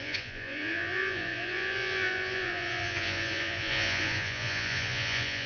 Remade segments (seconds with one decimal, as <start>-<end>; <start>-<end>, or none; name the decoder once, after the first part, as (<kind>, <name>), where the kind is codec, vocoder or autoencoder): 0.0-5.5 (vocoder, Vocos)